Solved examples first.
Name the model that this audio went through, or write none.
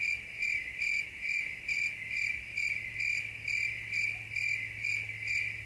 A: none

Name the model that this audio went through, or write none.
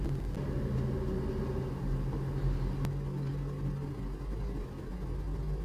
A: none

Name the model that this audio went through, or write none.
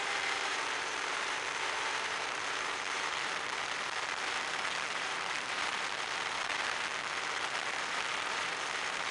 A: vocoder, BigVGAN v2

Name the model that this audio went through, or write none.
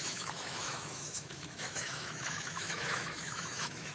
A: autoencoder, DAC-VAE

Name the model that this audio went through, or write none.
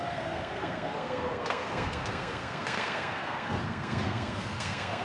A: codec, SNAC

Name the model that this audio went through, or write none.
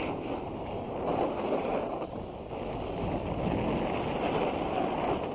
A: none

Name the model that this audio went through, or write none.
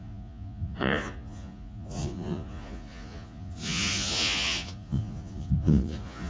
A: vocoder, Vocos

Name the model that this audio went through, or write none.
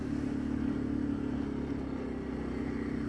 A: none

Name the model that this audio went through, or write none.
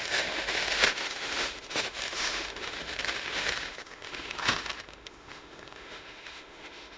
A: autoencoder, DAC-VAE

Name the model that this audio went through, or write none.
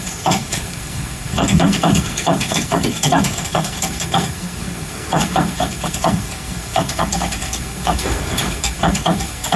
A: codec, SNAC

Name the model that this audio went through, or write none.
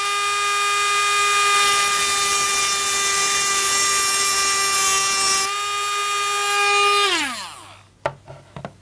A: none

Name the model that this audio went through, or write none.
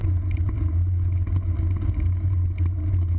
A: none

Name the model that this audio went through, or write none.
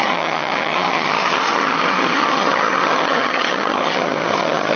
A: vocoder, HiFi-GAN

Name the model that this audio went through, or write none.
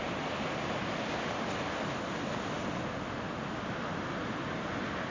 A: none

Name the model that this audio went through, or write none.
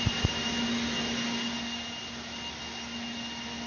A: none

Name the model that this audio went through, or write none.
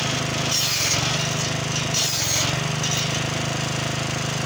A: none